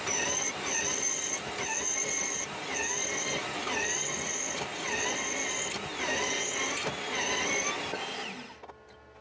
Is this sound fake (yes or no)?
no